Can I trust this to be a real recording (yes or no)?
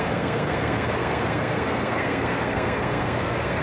no